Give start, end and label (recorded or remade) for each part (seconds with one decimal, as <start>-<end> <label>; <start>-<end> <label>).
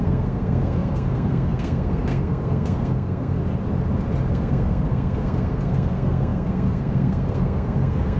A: 0.0-3.4 remade; 3.4-4.3 recorded; 4.3-8.2 remade